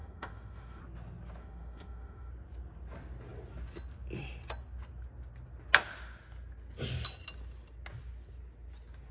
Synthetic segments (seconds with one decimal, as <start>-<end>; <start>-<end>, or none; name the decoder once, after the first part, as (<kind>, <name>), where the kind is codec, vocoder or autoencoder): 0.0-0.8 (autoencoder, DAC-VAE); 1.4-2.3